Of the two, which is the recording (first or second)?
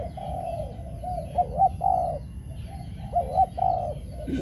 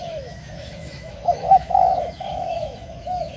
first